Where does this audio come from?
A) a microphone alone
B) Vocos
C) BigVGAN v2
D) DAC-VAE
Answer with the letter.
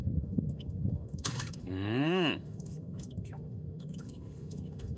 D